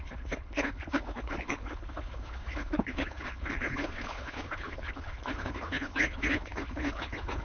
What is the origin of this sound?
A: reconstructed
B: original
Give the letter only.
A